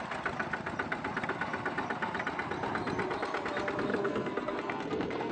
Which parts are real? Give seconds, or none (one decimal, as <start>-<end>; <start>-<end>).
0.0-3.9